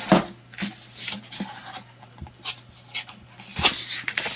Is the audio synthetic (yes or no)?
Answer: no